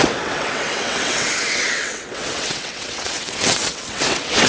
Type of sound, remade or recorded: remade